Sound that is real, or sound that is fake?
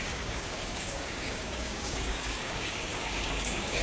fake